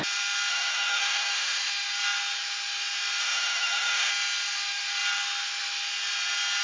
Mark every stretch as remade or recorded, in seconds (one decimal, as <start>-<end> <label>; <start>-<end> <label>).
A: 0.0-0.5 recorded; 0.5-1.7 remade; 1.7-3.2 recorded; 3.2-4.1 remade; 4.1-6.6 recorded